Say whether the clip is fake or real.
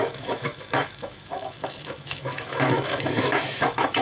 fake